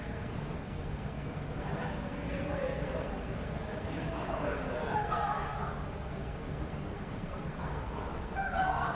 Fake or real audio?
fake